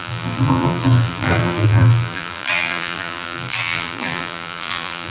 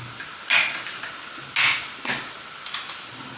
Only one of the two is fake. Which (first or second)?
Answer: first